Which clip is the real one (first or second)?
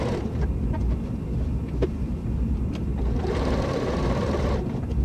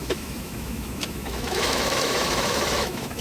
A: first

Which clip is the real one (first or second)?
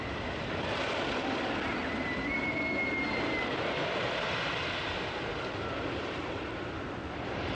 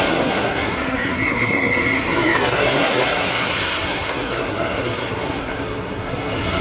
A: first